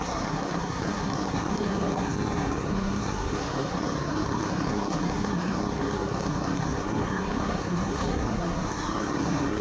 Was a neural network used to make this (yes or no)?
yes